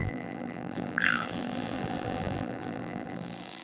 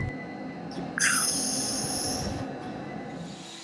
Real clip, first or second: second